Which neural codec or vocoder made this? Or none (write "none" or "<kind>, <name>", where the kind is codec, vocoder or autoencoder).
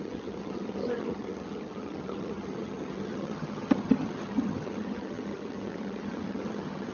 vocoder, HiFi-GAN